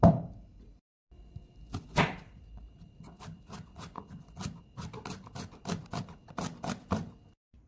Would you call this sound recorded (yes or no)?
yes